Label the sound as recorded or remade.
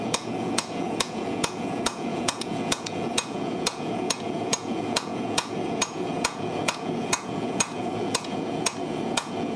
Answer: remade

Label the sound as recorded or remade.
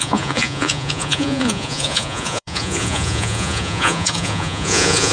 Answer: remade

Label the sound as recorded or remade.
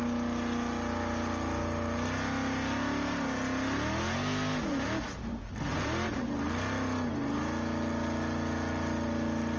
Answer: recorded